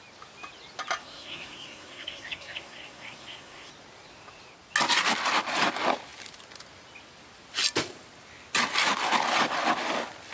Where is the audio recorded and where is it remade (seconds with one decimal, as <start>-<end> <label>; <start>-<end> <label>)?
0.0-1.0 recorded; 1.0-3.7 remade; 3.7-10.3 recorded